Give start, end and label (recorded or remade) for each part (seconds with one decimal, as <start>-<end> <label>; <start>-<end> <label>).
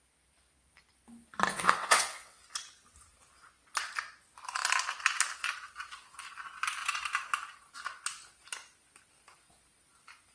0.0-1.5 recorded; 1.5-2.4 remade; 2.4-10.3 recorded